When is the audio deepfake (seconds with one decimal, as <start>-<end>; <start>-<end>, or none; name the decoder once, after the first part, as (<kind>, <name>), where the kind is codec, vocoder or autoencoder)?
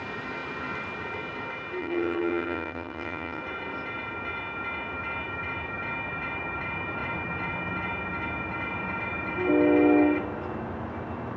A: 1.8-3.4 (vocoder, HiFi-GAN)